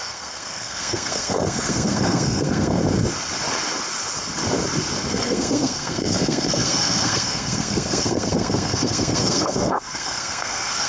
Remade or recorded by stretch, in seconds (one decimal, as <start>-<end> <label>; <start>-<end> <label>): 0.0-2.8 remade; 2.8-5.1 recorded; 5.1-10.9 remade